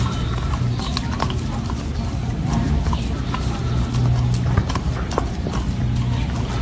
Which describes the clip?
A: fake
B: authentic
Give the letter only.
B